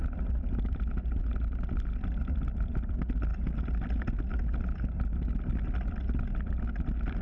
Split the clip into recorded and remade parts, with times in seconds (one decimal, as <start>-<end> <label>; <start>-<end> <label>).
0.0-7.2 recorded